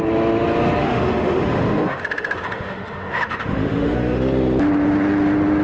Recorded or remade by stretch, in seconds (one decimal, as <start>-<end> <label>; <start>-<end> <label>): 0.0-0.8 recorded; 0.8-4.2 remade; 4.2-5.6 recorded